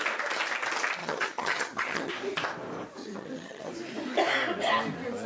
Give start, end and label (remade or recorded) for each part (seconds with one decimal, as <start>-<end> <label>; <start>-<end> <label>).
0.0-1.0 recorded; 1.0-2.1 remade; 2.1-3.0 recorded; 3.0-3.7 remade; 3.7-5.3 recorded

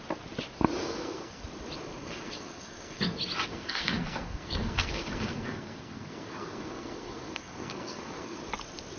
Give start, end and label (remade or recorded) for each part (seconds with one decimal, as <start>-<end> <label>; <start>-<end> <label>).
0.0-0.8 recorded; 0.8-1.4 remade; 1.4-2.0 recorded; 2.0-3.0 remade; 3.0-3.5 recorded; 3.5-8.4 remade; 8.4-9.0 recorded

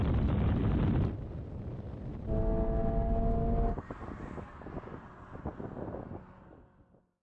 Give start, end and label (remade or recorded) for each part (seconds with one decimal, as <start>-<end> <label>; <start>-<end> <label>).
0.0-7.2 recorded

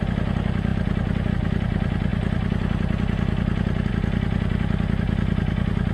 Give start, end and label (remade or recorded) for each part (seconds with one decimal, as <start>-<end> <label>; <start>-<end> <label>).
0.0-5.9 recorded

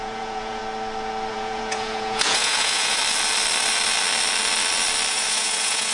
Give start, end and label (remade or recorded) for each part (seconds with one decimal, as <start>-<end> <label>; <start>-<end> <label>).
0.0-0.6 remade; 0.6-1.3 recorded; 1.3-3.0 remade; 3.0-5.1 recorded; 5.1-5.9 remade